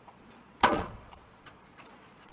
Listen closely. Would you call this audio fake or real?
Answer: fake